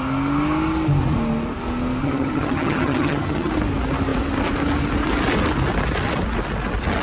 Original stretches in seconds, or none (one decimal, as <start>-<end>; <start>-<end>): 0.0-2.0; 3.5-7.0